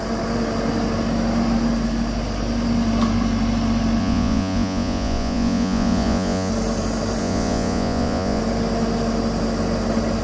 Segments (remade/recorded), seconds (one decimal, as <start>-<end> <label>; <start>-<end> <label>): 0.0-4.0 recorded; 4.0-6.5 remade; 6.5-7.2 recorded; 7.2-8.4 remade; 8.4-10.2 recorded